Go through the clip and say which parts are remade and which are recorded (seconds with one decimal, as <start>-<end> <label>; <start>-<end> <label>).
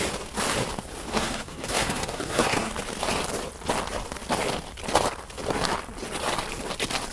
0.0-1.1 recorded; 1.1-2.7 remade; 2.7-7.1 recorded